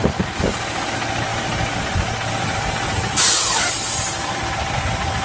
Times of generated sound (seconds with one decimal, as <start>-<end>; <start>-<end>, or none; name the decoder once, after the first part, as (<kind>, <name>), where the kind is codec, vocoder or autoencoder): 1.3-4.4 (vocoder, BigVGAN v2)

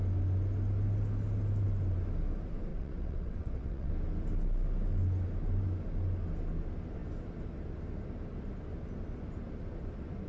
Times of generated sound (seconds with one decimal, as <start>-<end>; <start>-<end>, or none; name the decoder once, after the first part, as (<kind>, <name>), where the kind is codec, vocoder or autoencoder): 2.7-3.9 (vocoder, WaveNeXt)

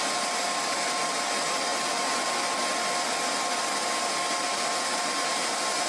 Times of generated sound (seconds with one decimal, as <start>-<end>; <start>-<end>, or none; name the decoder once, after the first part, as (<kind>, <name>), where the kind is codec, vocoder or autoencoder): none

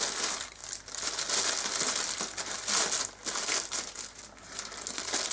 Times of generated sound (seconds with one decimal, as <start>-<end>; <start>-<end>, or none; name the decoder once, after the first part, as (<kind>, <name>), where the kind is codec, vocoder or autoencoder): none

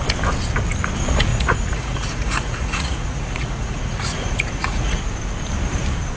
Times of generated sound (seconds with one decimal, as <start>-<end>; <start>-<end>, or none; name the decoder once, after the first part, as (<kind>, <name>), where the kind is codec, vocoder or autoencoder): 1.3-5.0 (vocoder, Vocos)

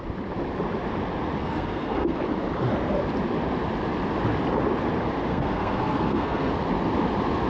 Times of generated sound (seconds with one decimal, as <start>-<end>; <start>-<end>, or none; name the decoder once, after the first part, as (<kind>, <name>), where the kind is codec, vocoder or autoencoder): 1.4-2.2 (codec, SNAC); 5.3-6.5

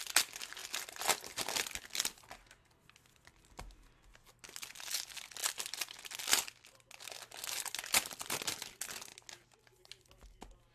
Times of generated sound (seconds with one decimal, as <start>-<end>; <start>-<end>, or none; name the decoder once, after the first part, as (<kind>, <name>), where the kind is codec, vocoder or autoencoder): none

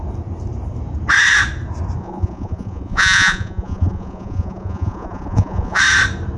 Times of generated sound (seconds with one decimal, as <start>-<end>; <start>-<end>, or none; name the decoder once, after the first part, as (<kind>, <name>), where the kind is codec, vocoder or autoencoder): 2.0-5.8 (vocoder, Vocos)